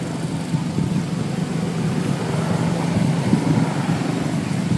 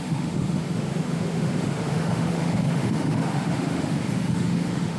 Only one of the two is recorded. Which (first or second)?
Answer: first